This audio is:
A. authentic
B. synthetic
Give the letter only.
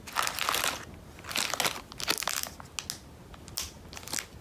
A